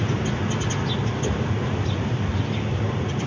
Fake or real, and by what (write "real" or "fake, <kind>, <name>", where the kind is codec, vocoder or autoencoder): real